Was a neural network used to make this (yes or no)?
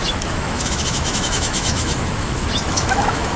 yes